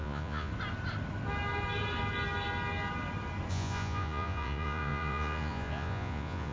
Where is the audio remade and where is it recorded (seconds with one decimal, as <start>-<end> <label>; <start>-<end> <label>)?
0.0-0.5 remade; 0.5-3.5 recorded; 3.5-6.5 remade